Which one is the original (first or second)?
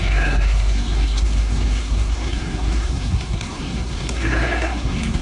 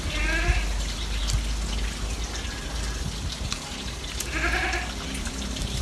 second